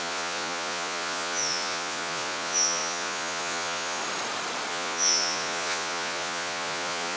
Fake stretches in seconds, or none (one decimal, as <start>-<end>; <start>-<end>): 0.0-4.0; 4.7-7.2